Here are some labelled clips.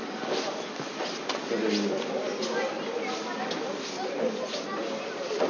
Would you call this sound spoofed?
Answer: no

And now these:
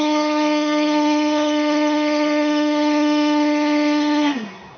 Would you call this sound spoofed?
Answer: yes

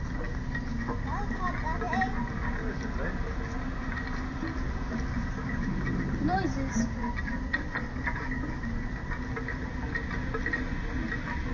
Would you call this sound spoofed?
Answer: no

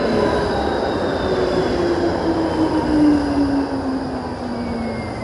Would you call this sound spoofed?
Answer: no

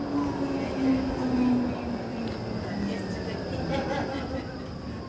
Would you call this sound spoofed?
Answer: no